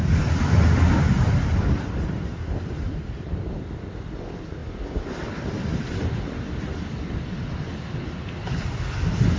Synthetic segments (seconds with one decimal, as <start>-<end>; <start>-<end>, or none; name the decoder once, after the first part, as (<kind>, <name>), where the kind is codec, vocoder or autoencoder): none